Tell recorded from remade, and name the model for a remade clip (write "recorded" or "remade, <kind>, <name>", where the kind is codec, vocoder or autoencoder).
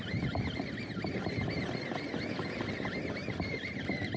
recorded